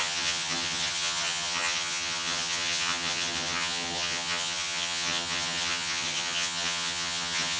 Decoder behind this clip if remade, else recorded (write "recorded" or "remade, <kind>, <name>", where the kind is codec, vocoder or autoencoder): remade, vocoder, HiFi-GAN